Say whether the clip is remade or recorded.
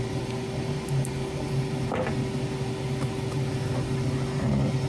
recorded